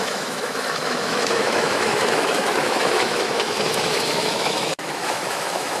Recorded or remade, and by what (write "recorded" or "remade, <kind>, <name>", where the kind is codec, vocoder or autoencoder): remade, autoencoder, DAC-VAE